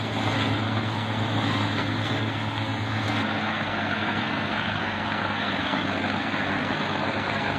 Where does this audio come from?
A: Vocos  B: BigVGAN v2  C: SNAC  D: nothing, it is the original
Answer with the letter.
C